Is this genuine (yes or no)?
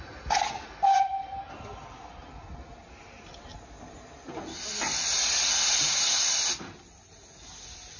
yes